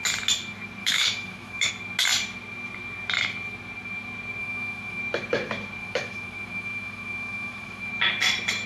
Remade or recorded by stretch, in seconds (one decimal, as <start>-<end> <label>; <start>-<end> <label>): 0.0-0.8 recorded; 0.8-1.7 remade; 1.7-4.4 recorded; 4.4-5.0 remade; 5.0-5.8 recorded; 5.8-7.9 remade; 7.9-8.7 recorded